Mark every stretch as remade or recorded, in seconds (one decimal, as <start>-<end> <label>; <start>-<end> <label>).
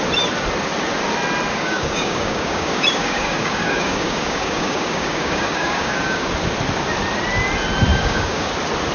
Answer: 0.0-1.5 recorded; 1.5-6.3 remade; 6.3-7.9 recorded; 7.9-8.5 remade; 8.5-8.9 recorded